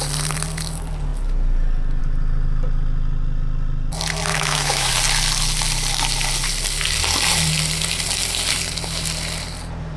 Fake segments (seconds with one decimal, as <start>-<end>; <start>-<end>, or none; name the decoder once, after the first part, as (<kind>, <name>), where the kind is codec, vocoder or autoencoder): 4.3-4.9 (autoencoder, DAC-VAE)